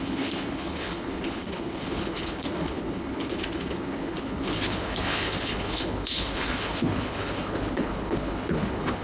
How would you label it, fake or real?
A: fake